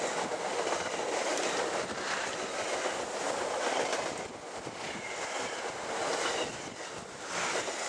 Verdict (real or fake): real